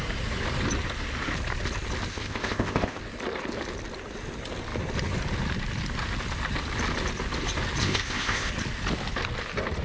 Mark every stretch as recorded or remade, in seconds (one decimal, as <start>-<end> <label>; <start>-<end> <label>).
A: 0.0-2.1 recorded; 2.1-3.0 remade; 3.0-7.8 recorded; 7.8-8.5 remade; 8.5-9.8 recorded